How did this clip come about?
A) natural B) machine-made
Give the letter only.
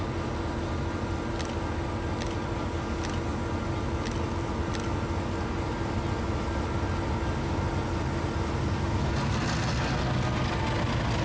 A